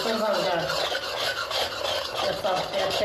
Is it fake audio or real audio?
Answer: real